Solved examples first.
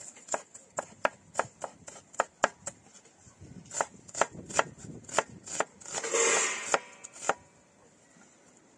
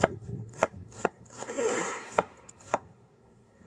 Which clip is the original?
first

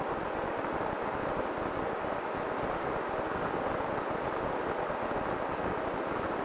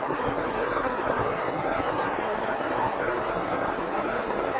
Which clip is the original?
first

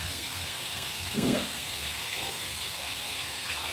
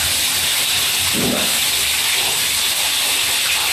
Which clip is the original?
second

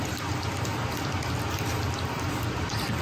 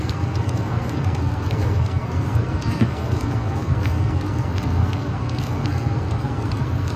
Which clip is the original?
first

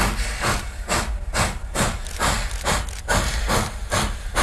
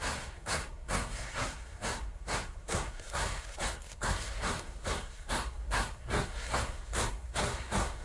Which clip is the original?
first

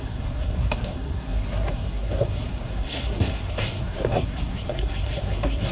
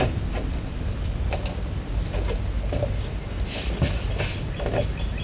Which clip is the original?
second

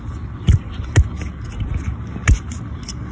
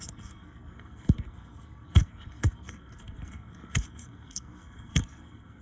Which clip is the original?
first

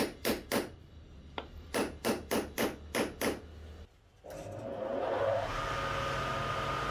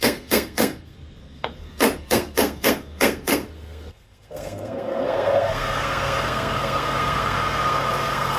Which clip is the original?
first